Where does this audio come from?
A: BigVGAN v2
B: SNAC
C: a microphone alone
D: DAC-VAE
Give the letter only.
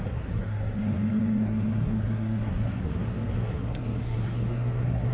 B